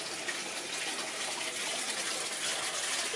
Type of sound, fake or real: real